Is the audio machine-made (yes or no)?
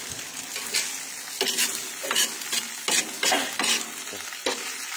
no